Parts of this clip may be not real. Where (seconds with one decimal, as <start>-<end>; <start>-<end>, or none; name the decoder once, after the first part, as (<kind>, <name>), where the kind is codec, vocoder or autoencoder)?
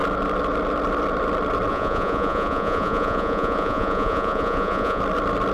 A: 1.7-5.0 (vocoder, Vocos)